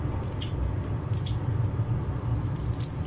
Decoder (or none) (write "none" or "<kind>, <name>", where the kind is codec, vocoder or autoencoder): none